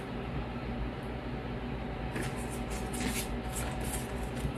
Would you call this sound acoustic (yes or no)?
yes